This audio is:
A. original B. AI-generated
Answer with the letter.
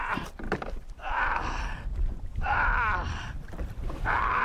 B